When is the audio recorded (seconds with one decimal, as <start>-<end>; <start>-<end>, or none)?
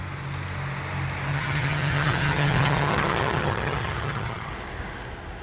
0.0-1.3; 4.5-5.4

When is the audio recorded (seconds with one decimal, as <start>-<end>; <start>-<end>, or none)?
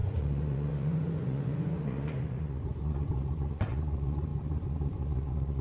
none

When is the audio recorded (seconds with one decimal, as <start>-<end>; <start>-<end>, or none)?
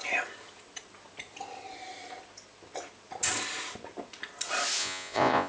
0.0-4.8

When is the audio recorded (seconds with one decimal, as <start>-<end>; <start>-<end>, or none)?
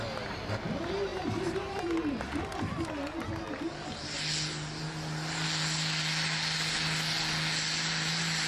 0.0-8.5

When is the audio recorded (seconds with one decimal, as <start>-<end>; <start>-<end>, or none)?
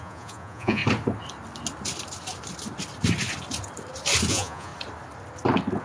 0.8-4.3; 4.7-5.8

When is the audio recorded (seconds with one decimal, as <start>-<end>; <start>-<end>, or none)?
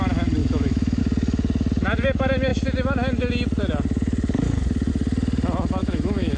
0.0-0.4; 1.0-5.8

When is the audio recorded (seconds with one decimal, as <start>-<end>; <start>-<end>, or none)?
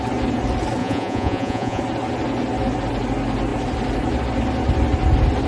0.0-0.8; 1.8-5.5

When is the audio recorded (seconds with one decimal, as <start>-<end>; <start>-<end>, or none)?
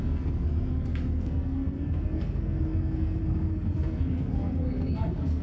none